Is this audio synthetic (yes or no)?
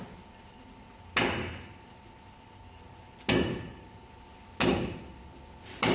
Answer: no